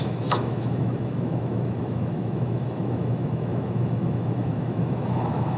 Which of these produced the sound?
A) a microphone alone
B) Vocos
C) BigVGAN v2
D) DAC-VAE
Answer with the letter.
D